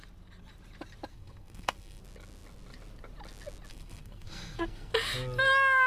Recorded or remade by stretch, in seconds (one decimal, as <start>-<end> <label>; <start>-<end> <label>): 0.0-1.1 recorded; 1.1-2.0 remade; 2.0-3.7 recorded; 3.7-4.9 remade; 4.9-5.9 recorded